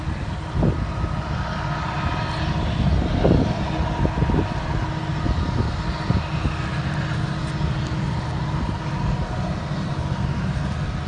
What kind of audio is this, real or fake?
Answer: real